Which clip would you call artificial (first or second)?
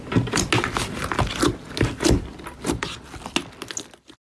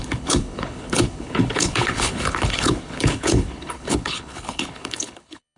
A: second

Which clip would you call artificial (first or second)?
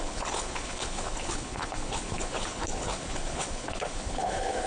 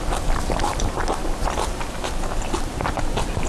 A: first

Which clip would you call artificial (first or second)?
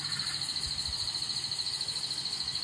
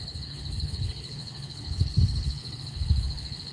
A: second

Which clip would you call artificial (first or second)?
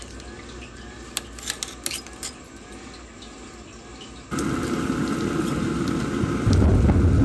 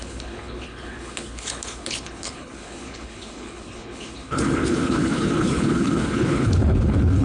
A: second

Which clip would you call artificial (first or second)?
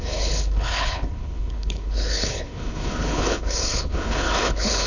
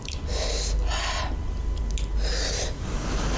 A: first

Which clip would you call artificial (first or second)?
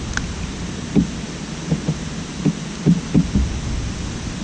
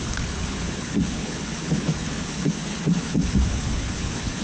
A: second